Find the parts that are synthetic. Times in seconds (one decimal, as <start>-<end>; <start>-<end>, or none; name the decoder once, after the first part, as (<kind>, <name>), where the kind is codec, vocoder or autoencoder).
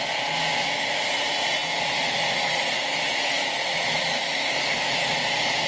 2.8-4.6 (autoencoder, DAC-VAE)